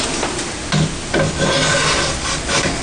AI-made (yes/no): no